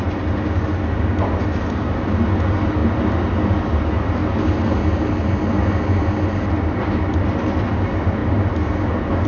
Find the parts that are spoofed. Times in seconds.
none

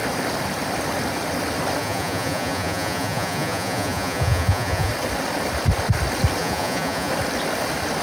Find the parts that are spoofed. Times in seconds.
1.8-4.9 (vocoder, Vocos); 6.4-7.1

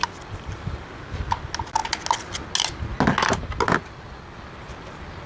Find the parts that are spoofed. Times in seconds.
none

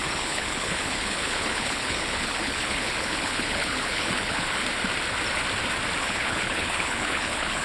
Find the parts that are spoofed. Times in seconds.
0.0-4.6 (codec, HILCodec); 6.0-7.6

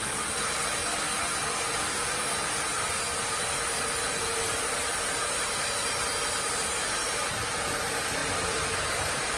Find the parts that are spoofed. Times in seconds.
0.0-0.8 (vocoder, BigVGAN v2); 4.2-8.2; 8.8-9.4